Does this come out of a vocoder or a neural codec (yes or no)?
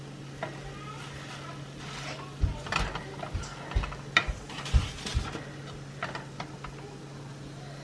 no